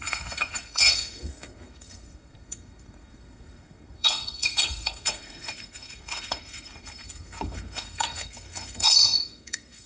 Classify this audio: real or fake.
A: fake